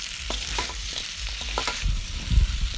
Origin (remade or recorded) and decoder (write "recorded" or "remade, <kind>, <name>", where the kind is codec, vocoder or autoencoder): remade, vocoder, BigVGAN v2